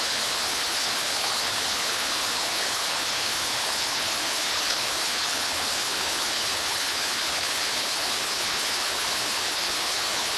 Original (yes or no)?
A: no